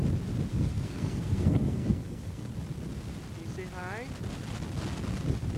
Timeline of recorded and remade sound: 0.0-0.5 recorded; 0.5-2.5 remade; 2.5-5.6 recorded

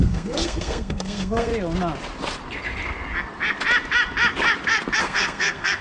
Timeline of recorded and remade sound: 0.0-1.5 remade; 1.5-5.0 recorded; 5.0-5.8 remade

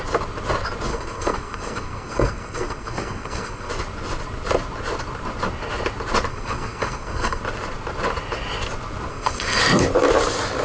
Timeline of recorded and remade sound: 0.0-0.9 recorded; 0.9-3.7 remade; 3.7-6.3 recorded; 6.3-7.4 remade; 7.4-9.1 recorded; 9.1-9.6 remade; 9.6-10.6 recorded

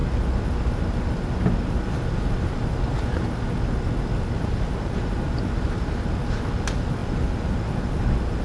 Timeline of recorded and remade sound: 0.0-8.4 recorded

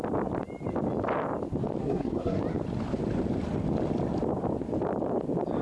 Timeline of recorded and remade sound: 0.0-1.8 recorded; 1.8-2.4 remade; 2.4-5.6 recorded

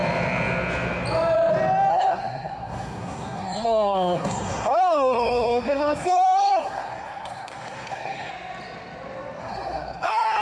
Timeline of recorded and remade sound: 0.0-1.9 recorded; 1.9-8.3 remade; 8.3-9.4 recorded; 9.4-10.4 remade

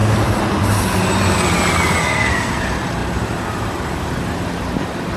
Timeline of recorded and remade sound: 0.0-2.0 recorded; 2.0-2.6 remade; 2.6-5.2 recorded